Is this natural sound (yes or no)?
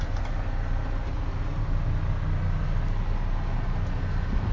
yes